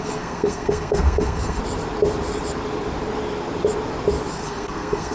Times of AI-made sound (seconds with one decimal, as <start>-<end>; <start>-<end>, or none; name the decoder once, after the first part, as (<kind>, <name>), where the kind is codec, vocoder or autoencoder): 0.0-1.6 (codec, SNAC); 4.3-5.1